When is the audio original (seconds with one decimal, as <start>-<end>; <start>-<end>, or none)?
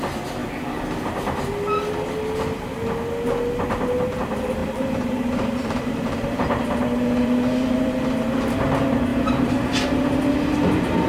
0.0-4.6; 8.0-9.1